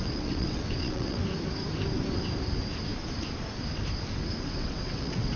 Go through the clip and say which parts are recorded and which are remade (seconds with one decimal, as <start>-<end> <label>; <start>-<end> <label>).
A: 0.0-1.2 remade; 1.2-4.4 recorded; 4.4-5.4 remade